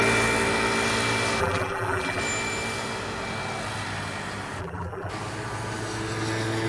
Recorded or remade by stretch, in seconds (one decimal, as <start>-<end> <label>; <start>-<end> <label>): 0.0-1.4 recorded; 1.4-2.2 remade; 2.2-4.6 recorded; 4.6-5.1 remade; 5.1-6.7 recorded

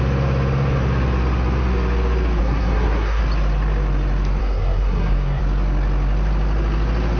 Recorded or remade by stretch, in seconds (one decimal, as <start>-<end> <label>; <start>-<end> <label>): 0.0-2.4 recorded; 2.4-3.2 remade; 3.2-4.4 recorded; 4.4-5.4 remade; 5.4-7.2 recorded